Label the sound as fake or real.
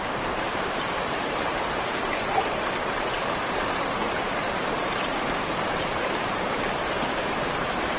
fake